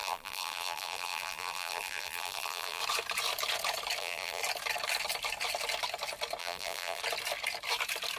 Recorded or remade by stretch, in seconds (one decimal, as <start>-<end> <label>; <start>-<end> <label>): 0.0-2.8 remade; 2.8-4.0 recorded; 4.0-4.4 remade; 4.4-6.4 recorded; 6.4-7.0 remade; 7.0-8.2 recorded